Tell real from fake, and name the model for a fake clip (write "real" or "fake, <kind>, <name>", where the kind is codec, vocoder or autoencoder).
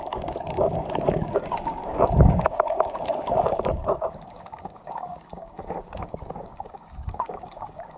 fake, codec, DAC